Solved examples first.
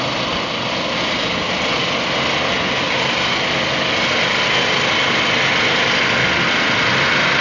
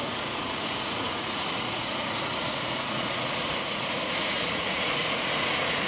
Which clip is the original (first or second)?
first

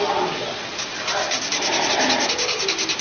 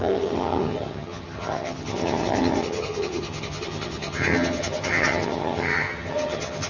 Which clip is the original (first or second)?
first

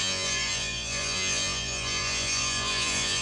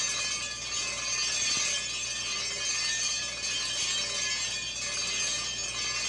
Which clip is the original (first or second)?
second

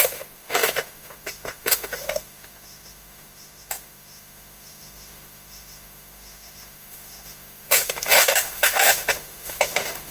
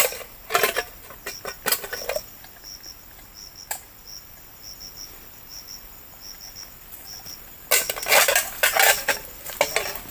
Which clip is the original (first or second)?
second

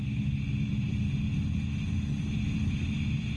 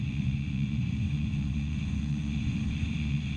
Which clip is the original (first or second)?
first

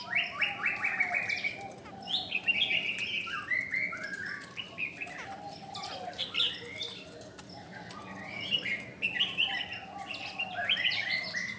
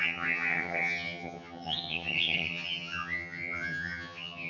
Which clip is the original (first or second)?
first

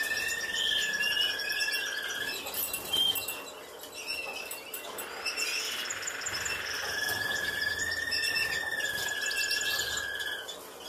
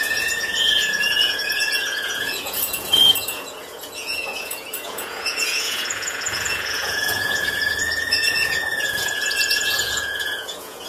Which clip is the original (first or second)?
first